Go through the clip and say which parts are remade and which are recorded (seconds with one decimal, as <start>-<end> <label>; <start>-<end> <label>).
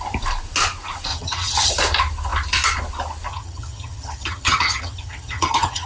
0.0-1.1 recorded; 1.1-1.7 remade; 1.7-3.3 recorded; 3.3-5.9 remade